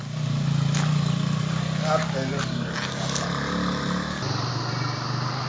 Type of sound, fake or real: real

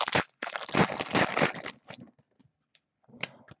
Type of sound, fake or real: real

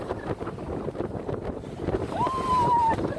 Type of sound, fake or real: fake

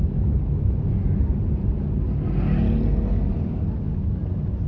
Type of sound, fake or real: real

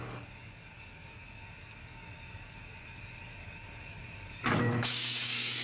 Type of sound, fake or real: fake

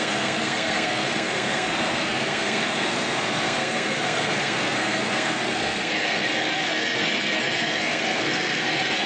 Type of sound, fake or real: fake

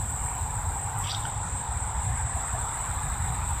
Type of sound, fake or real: fake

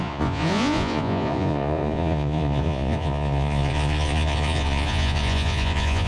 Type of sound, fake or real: fake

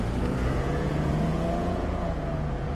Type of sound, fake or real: fake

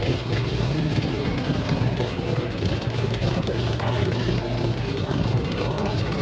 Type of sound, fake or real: fake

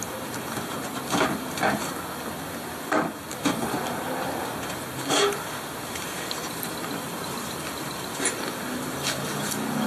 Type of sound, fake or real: real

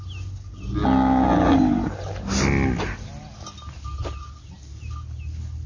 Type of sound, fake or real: real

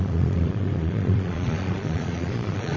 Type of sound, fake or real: fake